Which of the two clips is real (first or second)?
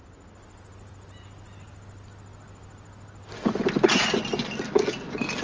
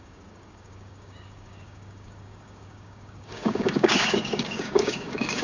first